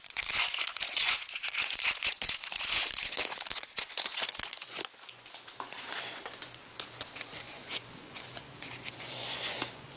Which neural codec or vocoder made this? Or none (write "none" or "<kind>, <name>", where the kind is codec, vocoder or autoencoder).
vocoder, Vocos